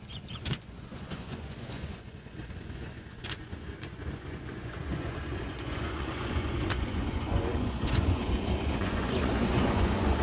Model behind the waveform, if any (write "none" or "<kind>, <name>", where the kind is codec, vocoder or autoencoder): vocoder, Vocos